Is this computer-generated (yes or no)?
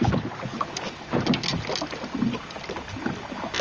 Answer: no